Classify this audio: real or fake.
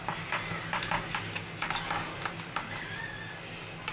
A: real